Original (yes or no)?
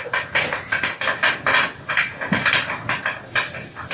yes